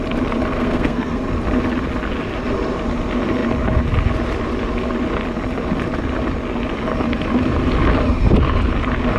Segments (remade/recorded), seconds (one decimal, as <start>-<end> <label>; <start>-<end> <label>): 0.0-0.5 recorded; 0.5-1.2 remade; 1.2-9.2 recorded